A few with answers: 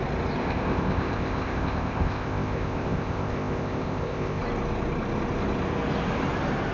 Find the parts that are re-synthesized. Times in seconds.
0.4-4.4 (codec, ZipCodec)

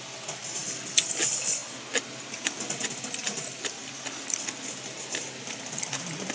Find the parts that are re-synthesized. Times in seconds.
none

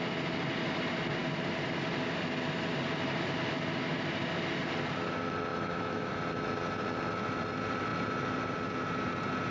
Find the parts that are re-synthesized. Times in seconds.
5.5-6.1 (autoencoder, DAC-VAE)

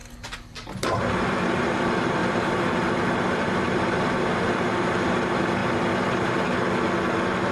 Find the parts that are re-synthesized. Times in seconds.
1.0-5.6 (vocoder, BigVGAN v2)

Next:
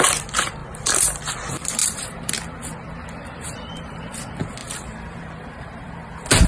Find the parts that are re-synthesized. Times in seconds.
0.6-1.2 (vocoder, BigVGAN v2); 1.8-2.3; 4.6-5.9

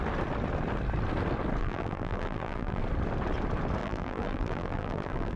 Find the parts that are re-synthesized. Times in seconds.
1.6-2.8 (vocoder, BigVGAN v2); 3.8-5.4

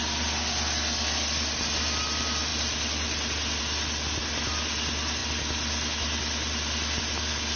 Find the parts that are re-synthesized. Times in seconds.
none

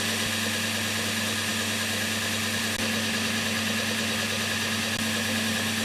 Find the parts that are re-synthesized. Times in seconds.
none